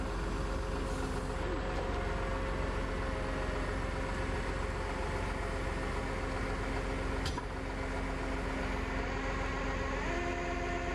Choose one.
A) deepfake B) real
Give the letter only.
B